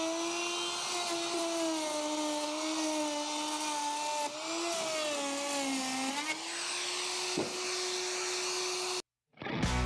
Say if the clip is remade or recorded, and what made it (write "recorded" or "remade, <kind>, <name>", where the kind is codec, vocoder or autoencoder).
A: recorded